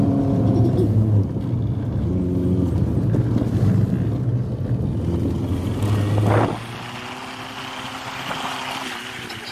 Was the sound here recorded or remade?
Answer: recorded